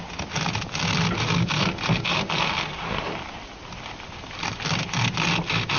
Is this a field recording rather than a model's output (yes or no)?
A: yes